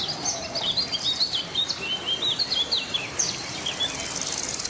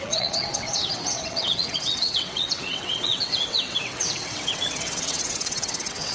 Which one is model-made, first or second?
second